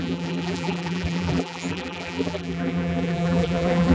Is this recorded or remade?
remade